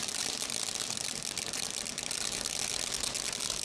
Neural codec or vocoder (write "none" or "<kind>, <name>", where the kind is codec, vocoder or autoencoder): none